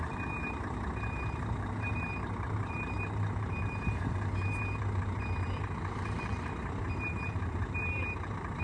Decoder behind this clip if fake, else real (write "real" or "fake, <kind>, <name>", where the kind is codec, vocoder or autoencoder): fake, vocoder, BigVGAN v2